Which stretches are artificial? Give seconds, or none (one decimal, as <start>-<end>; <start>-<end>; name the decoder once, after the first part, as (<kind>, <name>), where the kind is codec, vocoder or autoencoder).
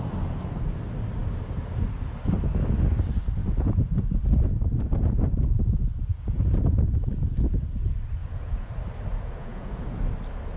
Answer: 3.4-6.6 (vocoder, Vocos); 8.2-8.7; 9.1-10.0